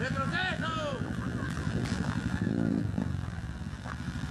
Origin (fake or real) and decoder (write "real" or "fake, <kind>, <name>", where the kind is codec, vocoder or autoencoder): fake, vocoder, BigVGAN v2